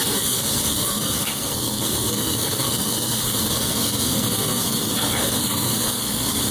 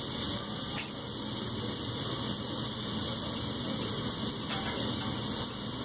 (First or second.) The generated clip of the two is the first